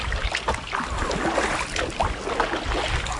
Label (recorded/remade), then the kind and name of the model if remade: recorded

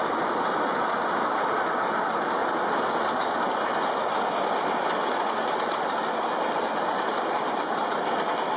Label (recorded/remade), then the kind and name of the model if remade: recorded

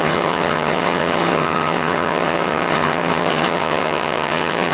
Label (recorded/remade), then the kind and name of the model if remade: remade, vocoder, HiFi-GAN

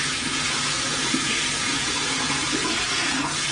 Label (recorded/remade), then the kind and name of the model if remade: remade, vocoder, Vocos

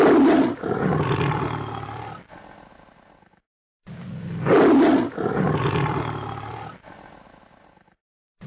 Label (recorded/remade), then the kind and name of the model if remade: recorded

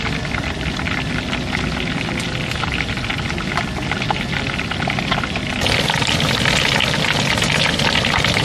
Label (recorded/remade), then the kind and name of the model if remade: recorded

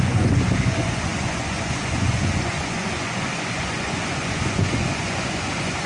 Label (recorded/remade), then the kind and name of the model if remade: remade, vocoder, Vocos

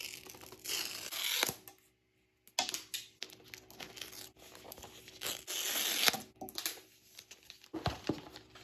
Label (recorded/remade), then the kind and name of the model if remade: recorded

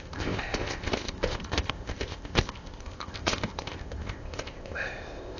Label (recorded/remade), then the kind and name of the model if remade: remade, codec, ZipCodec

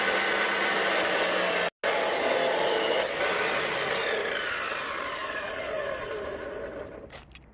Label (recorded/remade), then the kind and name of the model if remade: recorded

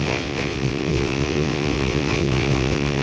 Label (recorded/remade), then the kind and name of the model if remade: remade, vocoder, WaveNeXt